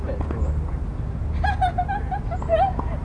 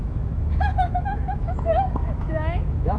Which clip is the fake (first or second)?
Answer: second